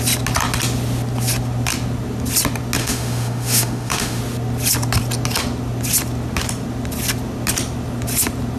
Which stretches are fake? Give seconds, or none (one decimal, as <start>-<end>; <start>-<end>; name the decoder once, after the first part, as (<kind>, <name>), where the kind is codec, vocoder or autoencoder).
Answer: 2.8-4.2 (autoencoder, DAC-VAE)